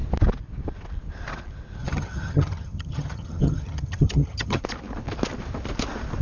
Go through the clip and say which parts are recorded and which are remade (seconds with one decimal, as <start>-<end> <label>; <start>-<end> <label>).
0.0-1.8 recorded; 1.8-4.6 remade; 4.6-6.2 recorded